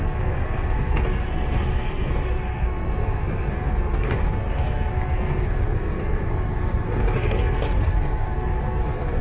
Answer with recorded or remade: remade